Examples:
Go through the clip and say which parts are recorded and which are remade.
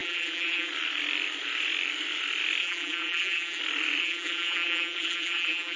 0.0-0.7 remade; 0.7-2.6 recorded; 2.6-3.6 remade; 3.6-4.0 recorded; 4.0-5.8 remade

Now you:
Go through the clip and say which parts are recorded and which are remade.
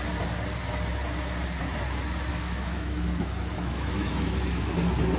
0.0-2.3 recorded; 2.3-4.7 remade; 4.7-5.2 recorded